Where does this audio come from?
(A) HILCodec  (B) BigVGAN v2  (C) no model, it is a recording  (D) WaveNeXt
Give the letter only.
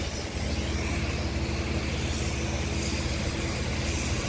C